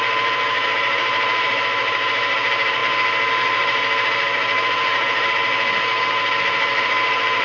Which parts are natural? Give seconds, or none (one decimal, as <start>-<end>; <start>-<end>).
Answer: 2.8-3.4; 5.4-6.4